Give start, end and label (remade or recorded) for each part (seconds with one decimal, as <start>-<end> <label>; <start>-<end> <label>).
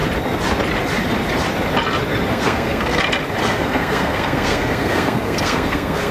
0.0-2.3 recorded; 2.3-3.0 remade; 3.0-3.4 recorded; 3.4-6.1 remade